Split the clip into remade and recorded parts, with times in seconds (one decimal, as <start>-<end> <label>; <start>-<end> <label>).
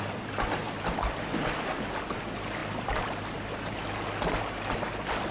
0.0-5.3 recorded